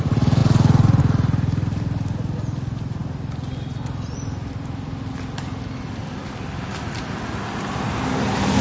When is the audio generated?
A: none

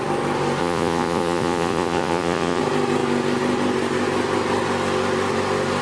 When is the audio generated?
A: 0.6-2.6 (vocoder, Vocos)

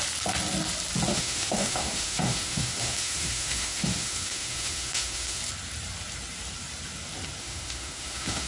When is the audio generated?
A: 1.1-5.4 (autoencoder, DAC-VAE); 7.4-8.5

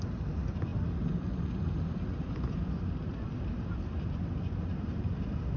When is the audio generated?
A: none

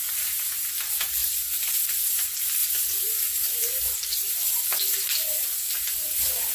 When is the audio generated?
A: 1.2-1.7 (vocoder, BigVGAN v2); 2.6-4.6

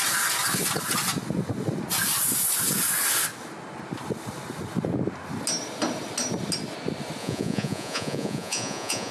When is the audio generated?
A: 7.2-9.1 (vocoder, Vocos)

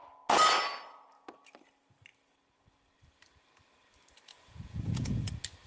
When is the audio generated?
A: 4.3-5.3 (vocoder, Vocos)